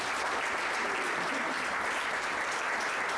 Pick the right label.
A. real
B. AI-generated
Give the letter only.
B